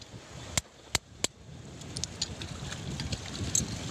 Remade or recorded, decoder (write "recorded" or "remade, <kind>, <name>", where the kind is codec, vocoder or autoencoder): recorded